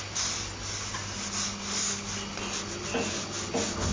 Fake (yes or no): no